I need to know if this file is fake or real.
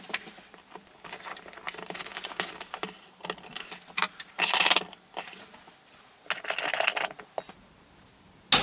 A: real